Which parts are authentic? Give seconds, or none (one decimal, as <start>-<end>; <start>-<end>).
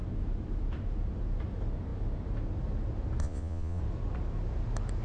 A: 0.0-3.2; 3.8-5.0